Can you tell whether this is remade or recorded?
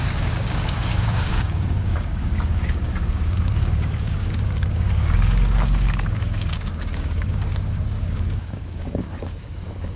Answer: remade